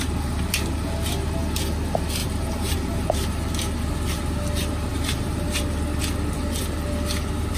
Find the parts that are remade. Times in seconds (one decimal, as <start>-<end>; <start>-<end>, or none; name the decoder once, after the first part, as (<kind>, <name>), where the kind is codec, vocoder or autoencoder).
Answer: 2.2-3.3 (vocoder, BigVGAN v2); 4.9-5.6